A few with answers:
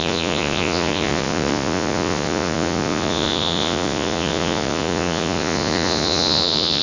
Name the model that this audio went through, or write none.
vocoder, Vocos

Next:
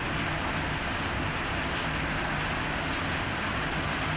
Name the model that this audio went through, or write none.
none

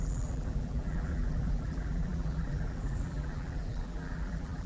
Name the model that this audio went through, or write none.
vocoder, BigVGAN v2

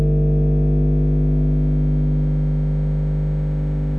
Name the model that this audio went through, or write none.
autoencoder, DAC-VAE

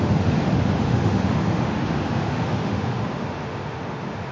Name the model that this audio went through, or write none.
autoencoder, DAC-VAE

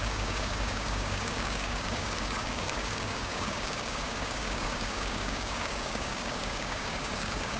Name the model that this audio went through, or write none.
codec, DAC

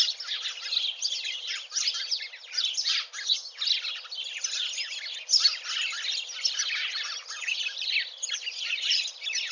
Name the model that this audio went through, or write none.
none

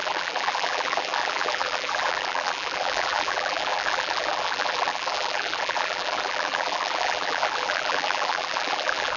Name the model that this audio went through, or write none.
vocoder, BigVGAN v2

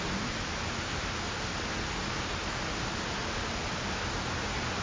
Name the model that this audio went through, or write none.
none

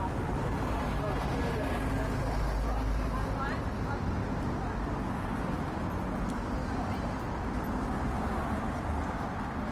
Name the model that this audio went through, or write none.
none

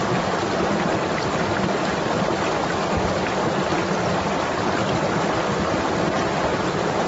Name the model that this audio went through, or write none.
none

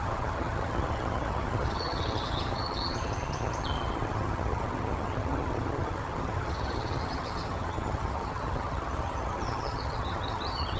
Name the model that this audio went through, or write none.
vocoder, HiFi-GAN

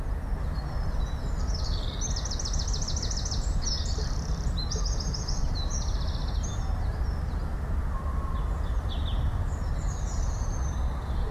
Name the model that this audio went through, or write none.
none